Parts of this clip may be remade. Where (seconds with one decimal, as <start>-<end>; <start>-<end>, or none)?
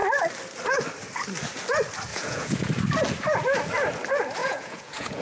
2.1-2.7; 4.4-5.2